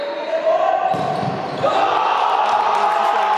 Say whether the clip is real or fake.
real